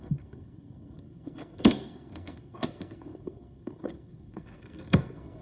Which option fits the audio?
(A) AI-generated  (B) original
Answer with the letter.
A